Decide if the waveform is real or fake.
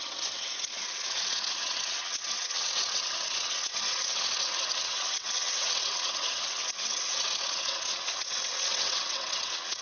fake